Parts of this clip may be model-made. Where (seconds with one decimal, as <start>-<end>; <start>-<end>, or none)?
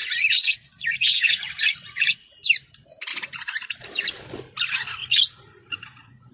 0.0-2.3; 3.1-4.2; 5.0-6.3